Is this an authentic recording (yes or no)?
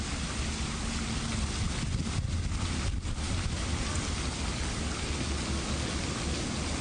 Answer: yes